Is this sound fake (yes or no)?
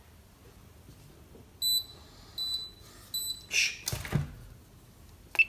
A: no